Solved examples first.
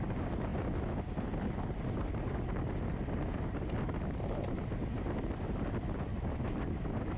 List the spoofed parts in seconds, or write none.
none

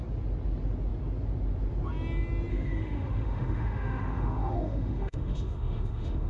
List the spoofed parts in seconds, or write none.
2.5-6.3 (autoencoder, DAC-VAE)

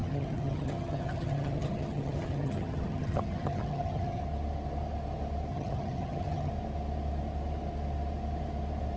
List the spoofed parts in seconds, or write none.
0.0-4.2 (vocoder, HiFi-GAN); 5.5-6.5

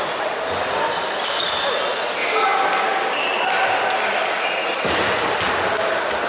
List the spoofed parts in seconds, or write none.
none

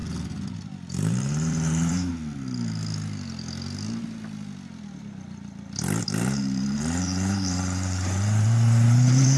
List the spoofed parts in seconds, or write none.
0.9-2.1 (vocoder, BigVGAN v2); 6.0-9.4

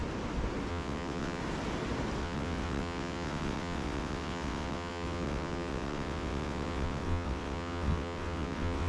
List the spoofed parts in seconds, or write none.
0.7-1.4 (vocoder, WaveNeXt); 2.2-8.9